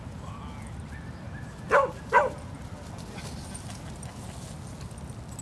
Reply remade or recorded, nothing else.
recorded